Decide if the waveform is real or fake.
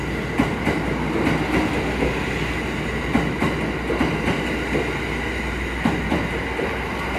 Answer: real